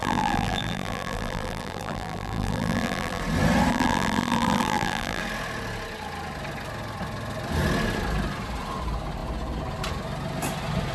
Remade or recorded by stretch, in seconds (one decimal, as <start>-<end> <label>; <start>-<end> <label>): 0.0-3.2 remade; 3.2-3.7 recorded; 3.7-5.2 remade; 5.2-10.9 recorded